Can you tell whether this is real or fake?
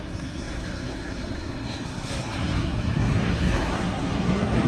fake